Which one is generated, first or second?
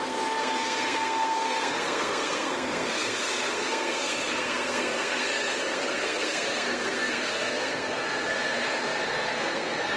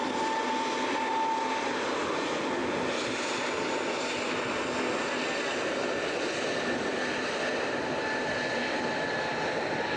first